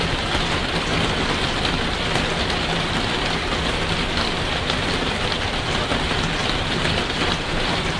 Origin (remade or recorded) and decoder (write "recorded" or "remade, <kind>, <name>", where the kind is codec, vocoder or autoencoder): recorded